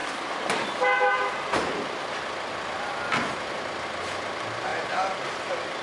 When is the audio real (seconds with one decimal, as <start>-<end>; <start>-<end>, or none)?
2.0-5.8